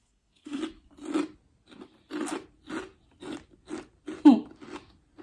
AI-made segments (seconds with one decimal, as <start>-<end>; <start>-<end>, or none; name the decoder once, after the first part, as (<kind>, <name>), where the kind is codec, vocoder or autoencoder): 0.0-0.6 (codec, SNAC)